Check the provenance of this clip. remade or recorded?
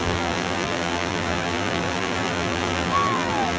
remade